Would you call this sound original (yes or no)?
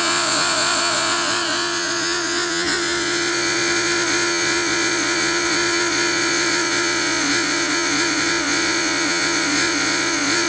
no